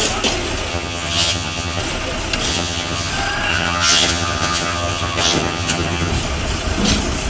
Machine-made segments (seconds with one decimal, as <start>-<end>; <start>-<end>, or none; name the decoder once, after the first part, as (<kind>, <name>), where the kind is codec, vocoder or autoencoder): 0.7-1.8 (vocoder, HiFi-GAN); 2.5-3.1; 3.5-6.1